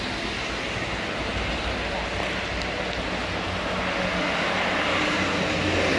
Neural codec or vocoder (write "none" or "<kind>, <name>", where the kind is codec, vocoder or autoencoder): none